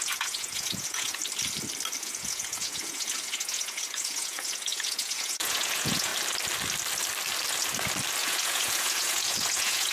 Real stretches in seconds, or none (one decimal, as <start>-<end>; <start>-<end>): 1.2-2.0; 6.1-8.2